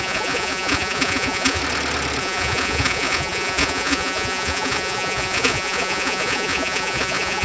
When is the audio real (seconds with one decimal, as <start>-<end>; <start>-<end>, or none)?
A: 1.6-2.2